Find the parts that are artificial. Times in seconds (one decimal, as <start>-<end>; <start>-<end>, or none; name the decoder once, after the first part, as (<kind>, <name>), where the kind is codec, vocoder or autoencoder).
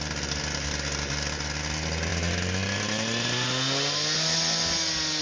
none